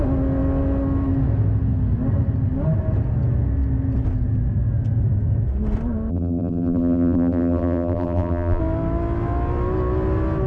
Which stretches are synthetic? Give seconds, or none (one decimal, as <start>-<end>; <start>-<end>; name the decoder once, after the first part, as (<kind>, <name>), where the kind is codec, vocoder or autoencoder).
6.1-8.6 (vocoder, BigVGAN v2)